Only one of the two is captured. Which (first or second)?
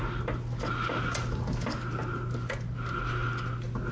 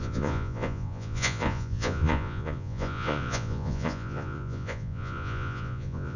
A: first